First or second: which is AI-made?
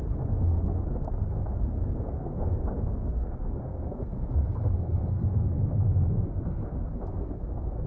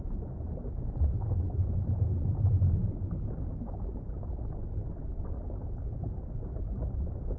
first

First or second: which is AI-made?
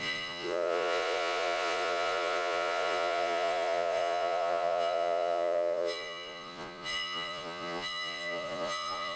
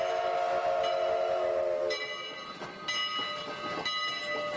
first